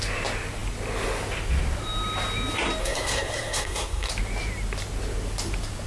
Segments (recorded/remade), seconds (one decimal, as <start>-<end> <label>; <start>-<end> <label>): 0.0-2.8 recorded; 2.8-4.1 remade; 4.1-5.9 recorded

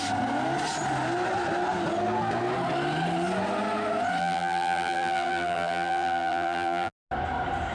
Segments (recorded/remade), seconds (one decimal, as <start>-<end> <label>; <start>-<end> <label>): 0.0-4.2 recorded; 4.2-6.9 remade; 6.9-7.7 recorded